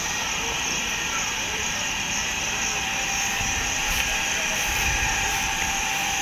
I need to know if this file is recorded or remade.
remade